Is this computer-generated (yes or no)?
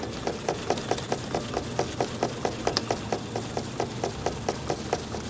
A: no